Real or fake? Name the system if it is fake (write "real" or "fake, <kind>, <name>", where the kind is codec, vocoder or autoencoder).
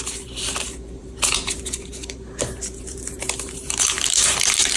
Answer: fake, vocoder, BigVGAN v2